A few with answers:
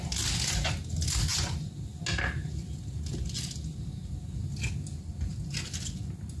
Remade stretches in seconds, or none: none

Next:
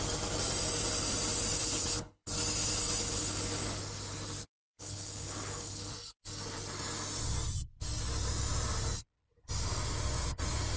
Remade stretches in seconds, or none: 1.6-2.3 (codec, HILCodec); 4.6-5.9

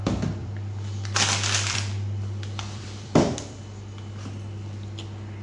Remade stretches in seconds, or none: 0.4-3.6 (vocoder, BigVGAN v2)